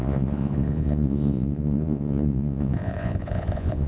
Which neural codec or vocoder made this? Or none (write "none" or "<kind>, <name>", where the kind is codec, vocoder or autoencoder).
vocoder, Vocos